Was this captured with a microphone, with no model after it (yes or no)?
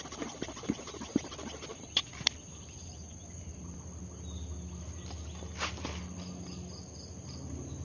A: no